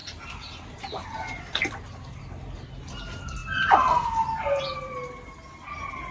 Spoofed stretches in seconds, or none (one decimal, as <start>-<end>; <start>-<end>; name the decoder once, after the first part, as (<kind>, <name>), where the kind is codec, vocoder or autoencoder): none